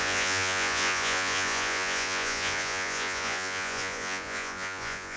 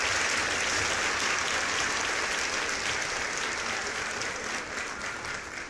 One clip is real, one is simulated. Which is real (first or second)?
second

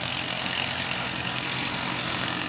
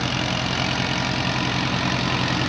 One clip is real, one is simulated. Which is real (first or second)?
second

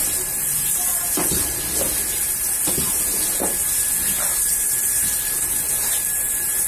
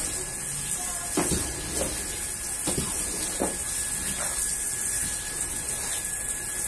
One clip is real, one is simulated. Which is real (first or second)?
second